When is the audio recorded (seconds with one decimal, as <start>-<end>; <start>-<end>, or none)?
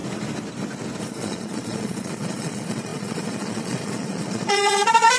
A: 0.0-1.0